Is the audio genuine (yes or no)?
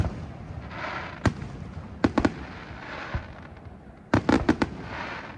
yes